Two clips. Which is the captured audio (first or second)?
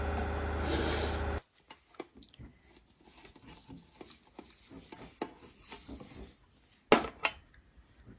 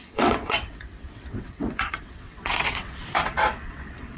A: first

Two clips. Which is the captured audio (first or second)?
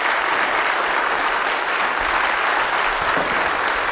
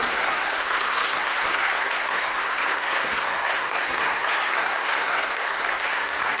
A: first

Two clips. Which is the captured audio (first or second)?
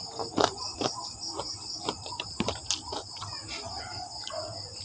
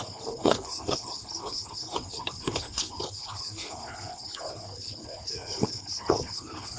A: first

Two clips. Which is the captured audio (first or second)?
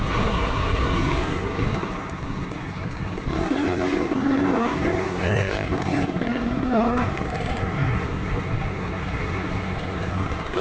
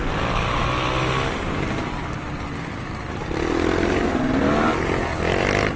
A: second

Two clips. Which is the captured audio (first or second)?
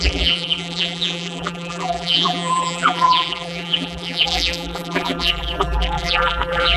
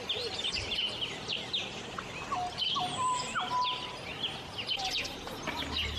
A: second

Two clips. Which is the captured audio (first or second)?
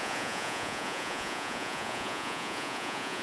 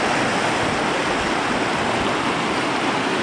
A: second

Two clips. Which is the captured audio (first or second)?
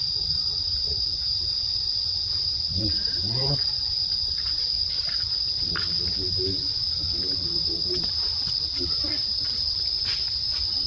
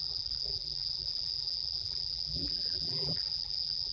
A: first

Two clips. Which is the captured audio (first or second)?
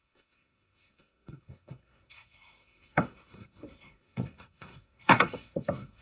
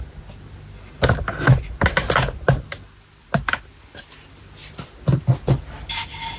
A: second